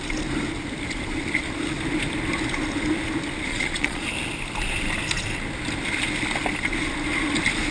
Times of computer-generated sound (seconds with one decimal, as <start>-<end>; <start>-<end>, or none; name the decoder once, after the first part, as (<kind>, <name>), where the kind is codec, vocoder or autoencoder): 3.5-4.0 (vocoder, Vocos)